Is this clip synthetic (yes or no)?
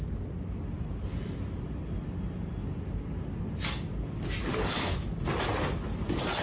no